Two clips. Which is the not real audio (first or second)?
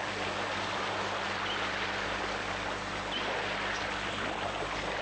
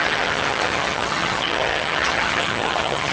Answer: second